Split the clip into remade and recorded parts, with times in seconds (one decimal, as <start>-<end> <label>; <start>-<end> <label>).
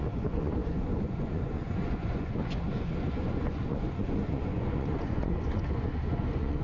0.0-6.6 remade